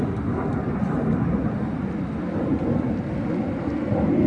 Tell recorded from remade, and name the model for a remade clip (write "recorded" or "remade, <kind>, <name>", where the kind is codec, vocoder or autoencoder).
recorded